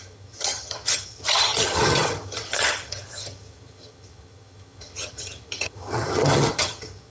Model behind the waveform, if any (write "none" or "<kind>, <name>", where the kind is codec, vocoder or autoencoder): vocoder, HiFi-GAN